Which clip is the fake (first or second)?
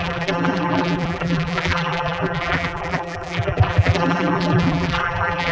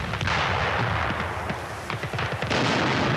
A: first